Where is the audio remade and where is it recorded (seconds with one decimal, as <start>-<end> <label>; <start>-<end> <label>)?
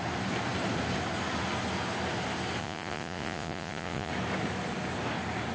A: 0.0-2.6 recorded; 2.6-4.1 remade; 4.1-5.5 recorded